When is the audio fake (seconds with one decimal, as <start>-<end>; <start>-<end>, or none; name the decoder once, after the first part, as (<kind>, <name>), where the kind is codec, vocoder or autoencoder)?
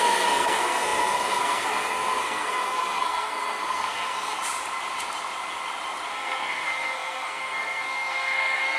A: 0.0-4.4 (codec, SNAC); 6.1-8.8